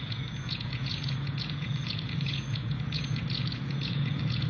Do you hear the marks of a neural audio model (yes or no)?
yes